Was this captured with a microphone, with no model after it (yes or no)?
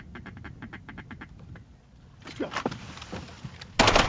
yes